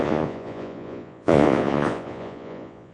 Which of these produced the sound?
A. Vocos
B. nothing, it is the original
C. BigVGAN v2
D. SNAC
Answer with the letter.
A